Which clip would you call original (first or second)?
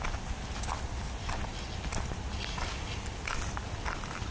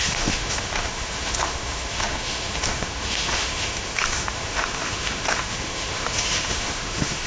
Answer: first